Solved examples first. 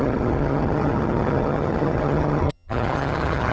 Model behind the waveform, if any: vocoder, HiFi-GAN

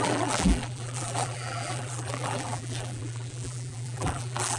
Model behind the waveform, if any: vocoder, BigVGAN v2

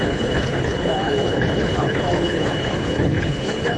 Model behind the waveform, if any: codec, HILCodec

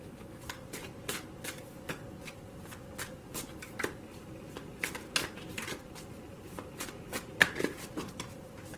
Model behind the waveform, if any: none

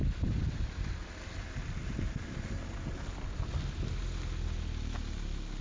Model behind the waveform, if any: none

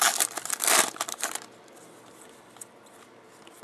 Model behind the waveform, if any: vocoder, BigVGAN v2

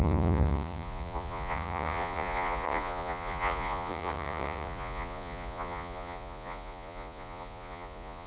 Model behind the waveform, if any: vocoder, Vocos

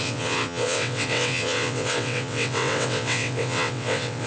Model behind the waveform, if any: vocoder, WaveNeXt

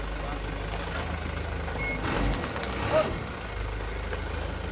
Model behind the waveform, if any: none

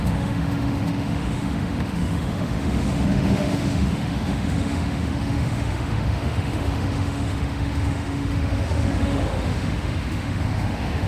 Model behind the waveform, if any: autoencoder, DAC-VAE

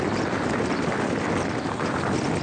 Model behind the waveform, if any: none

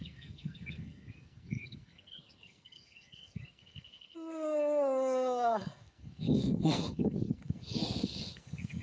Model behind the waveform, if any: codec, SNAC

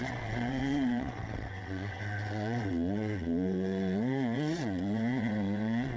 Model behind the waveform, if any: vocoder, WaveNeXt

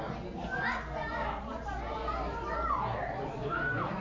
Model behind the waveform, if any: none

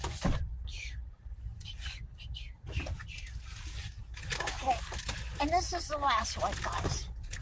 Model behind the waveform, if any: none